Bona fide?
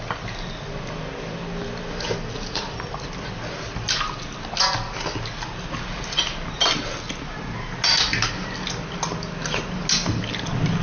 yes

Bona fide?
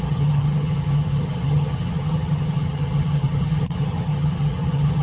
no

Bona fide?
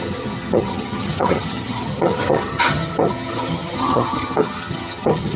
no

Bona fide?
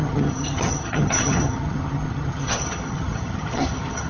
no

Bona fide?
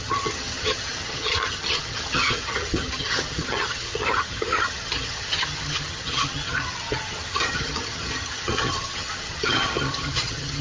no